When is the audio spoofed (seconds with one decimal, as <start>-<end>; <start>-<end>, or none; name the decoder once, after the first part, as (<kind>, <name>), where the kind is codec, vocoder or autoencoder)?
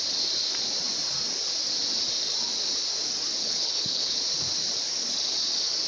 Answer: 3.4-4.2 (codec, HILCodec)